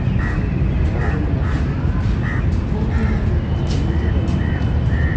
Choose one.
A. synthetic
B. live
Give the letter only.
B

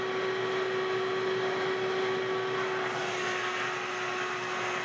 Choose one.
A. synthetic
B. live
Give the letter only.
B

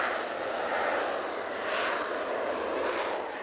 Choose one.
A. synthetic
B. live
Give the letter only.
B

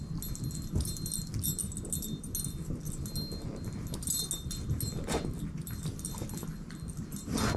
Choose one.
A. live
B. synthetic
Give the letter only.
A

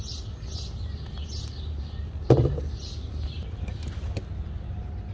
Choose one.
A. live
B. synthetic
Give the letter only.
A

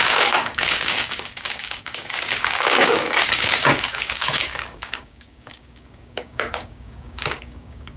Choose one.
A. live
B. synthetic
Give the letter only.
B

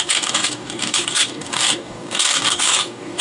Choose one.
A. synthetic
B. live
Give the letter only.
A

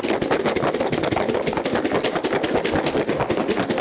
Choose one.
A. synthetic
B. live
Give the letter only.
B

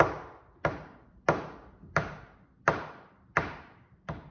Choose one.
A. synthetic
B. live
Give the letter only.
B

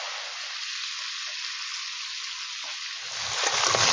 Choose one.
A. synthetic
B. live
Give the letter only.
B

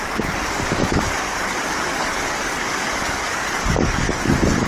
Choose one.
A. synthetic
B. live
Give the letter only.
A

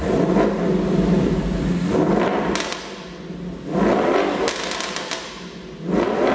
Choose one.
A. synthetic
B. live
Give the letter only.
B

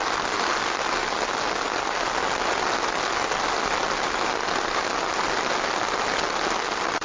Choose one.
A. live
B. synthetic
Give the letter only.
A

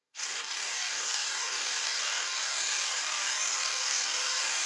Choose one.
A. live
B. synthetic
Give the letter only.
B